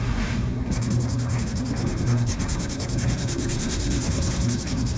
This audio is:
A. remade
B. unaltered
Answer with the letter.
A